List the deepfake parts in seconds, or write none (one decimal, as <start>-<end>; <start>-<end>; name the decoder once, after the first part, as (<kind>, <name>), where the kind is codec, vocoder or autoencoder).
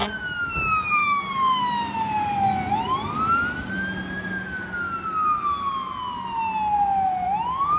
1.0-1.6 (codec, DAC)